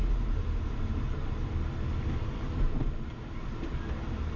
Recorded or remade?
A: recorded